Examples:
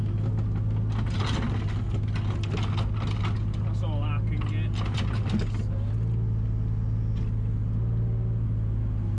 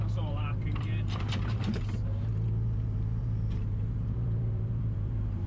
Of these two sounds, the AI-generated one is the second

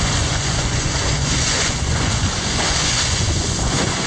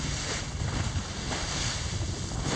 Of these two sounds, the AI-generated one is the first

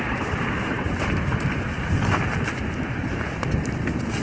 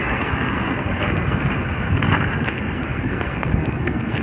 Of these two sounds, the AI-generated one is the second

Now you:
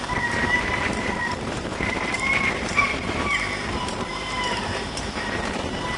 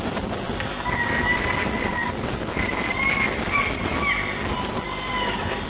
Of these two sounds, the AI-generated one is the first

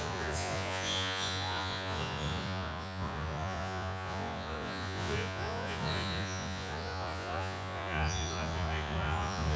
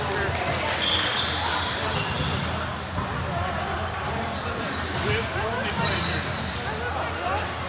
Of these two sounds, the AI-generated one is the first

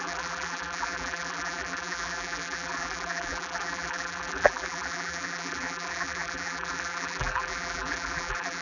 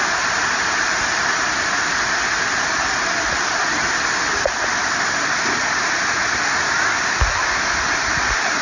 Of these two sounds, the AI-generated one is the first